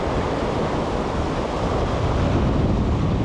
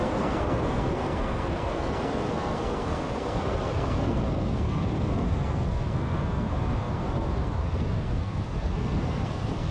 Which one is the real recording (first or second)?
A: first